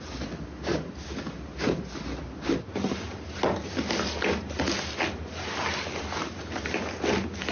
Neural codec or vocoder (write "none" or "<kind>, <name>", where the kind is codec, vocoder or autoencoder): none